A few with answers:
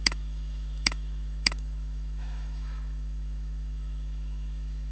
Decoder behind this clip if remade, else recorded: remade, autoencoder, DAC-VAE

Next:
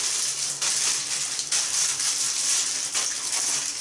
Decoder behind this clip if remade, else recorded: recorded